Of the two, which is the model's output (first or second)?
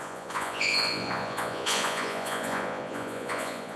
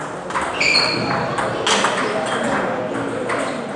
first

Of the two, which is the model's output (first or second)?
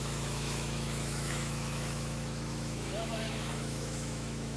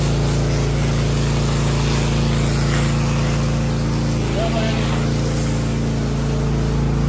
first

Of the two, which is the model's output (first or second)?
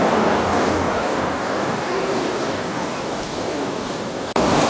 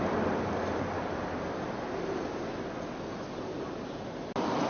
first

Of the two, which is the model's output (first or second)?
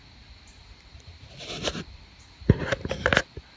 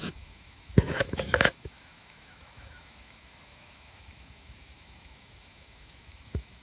second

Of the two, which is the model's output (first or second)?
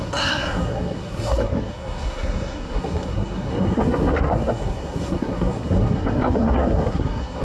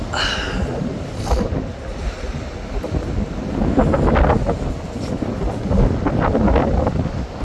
first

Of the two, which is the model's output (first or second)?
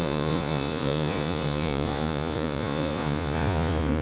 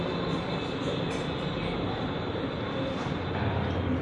first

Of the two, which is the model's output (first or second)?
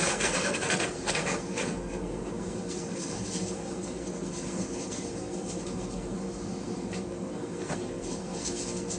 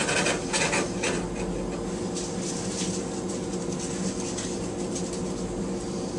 first